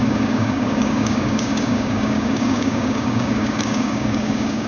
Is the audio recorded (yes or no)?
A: no